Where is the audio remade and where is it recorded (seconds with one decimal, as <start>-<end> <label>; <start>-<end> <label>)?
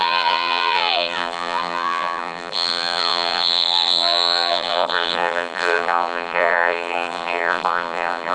0.0-8.3 remade